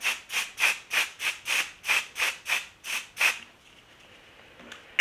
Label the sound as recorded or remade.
recorded